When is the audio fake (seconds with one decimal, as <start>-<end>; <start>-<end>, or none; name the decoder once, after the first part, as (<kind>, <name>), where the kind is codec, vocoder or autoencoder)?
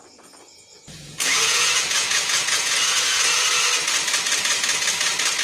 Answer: 0.0-3.2 (vocoder, Vocos)